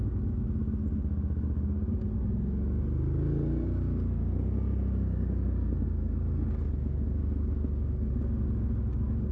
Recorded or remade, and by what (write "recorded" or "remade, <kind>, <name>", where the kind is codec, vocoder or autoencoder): recorded